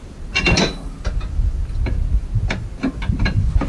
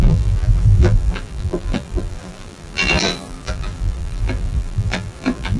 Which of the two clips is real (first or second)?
first